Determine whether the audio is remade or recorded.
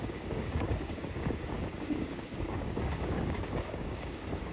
remade